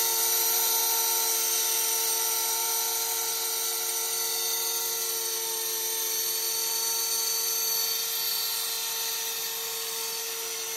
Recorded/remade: recorded